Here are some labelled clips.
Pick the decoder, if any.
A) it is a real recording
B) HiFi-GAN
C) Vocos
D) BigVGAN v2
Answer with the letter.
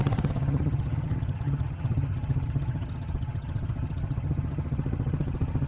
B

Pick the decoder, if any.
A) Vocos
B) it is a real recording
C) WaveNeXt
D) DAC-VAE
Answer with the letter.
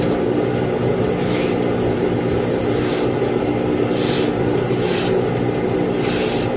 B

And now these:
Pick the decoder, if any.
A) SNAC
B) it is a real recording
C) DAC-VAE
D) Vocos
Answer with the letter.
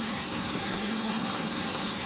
A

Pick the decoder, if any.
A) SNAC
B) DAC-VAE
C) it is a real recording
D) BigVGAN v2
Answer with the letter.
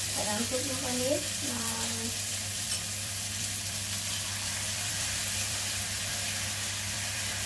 D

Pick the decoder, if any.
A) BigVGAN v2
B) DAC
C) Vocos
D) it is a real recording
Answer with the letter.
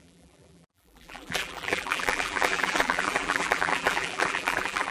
A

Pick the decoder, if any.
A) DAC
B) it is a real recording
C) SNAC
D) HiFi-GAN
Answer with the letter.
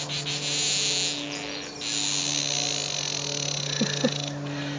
B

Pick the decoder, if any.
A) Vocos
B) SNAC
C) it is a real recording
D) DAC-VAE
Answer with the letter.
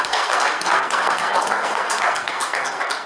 B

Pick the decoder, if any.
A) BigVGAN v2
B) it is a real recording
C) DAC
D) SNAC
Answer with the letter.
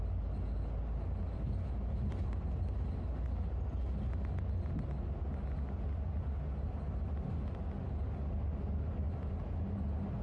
B